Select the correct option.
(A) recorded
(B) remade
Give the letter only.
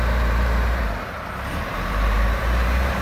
B